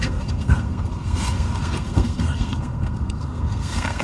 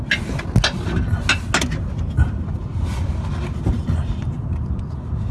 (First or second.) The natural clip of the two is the second